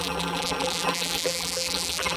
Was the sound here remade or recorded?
remade